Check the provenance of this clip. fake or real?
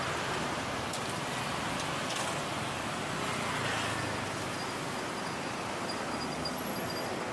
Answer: real